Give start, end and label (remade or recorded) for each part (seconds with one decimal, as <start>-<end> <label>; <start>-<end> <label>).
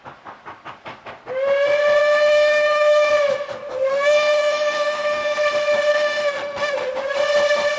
0.0-2.0 recorded; 2.0-3.1 remade; 3.1-3.9 recorded; 3.9-5.4 remade; 5.4-5.9 recorded; 5.9-6.9 remade; 6.9-7.8 recorded